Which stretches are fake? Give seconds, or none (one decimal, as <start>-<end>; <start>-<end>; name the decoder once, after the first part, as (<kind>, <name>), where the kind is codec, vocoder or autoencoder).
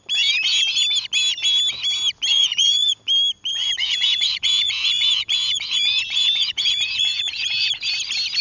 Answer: 2.3-3.0 (vocoder, Vocos); 3.5-7.9